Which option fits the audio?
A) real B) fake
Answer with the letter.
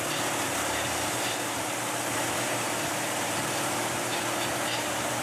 B